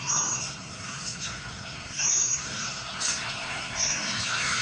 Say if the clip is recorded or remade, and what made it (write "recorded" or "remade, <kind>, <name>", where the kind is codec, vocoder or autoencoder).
remade, codec, SNAC